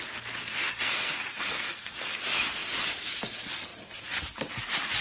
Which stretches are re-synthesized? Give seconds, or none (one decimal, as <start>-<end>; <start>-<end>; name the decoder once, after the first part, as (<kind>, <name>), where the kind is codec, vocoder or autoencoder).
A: 0.5-2.2 (codec, SNAC)